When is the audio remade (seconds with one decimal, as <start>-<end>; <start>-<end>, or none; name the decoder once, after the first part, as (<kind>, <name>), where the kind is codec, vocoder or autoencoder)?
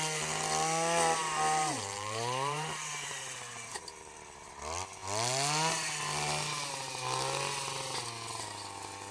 1.2-3.1 (vocoder, BigVGAN v2); 3.7-4.5